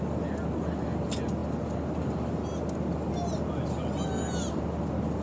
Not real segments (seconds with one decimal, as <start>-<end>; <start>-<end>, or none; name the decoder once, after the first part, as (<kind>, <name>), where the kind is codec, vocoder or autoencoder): none